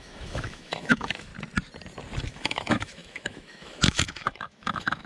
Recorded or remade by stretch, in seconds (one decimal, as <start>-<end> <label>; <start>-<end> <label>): 0.0-1.3 remade; 1.3-2.3 recorded; 2.3-5.1 remade